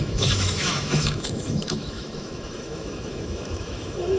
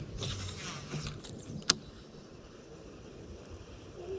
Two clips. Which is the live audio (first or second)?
second